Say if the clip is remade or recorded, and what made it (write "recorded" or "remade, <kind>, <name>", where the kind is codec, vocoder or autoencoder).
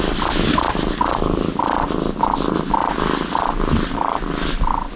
recorded